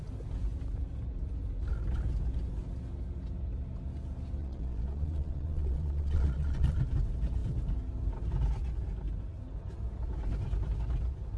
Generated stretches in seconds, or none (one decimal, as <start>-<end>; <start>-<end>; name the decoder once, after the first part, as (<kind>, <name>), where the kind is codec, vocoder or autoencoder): 4.4-6.8 (vocoder, Vocos)